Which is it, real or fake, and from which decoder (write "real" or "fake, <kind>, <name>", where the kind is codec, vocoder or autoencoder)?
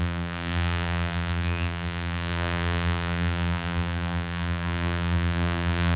fake, vocoder, BigVGAN v2